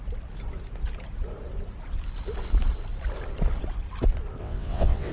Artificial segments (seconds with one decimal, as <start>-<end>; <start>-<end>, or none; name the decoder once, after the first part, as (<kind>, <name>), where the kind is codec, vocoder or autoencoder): 4.4-5.1 (vocoder, WaveNeXt)